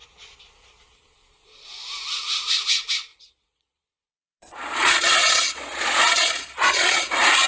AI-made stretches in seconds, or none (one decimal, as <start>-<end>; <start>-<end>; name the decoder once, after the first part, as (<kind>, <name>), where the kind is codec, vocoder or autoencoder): 3.1-7.0 (vocoder, Vocos)